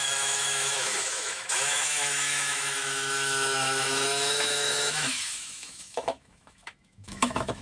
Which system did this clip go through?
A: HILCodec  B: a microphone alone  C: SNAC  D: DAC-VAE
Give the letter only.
D